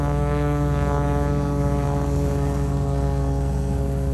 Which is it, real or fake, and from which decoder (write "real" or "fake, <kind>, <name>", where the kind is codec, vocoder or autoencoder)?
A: fake, codec, SNAC